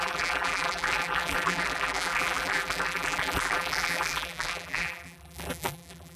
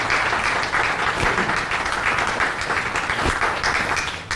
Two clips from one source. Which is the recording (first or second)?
second